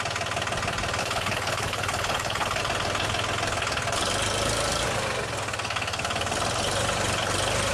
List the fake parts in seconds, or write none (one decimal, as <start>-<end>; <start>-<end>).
1.0-2.6